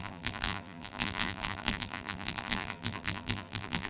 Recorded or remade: remade